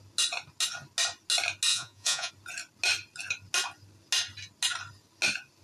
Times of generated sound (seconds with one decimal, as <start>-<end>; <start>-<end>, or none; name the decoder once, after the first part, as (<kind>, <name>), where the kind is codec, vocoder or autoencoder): 1.7-2.3 (vocoder, Vocos)